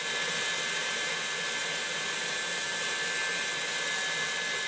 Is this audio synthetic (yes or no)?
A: no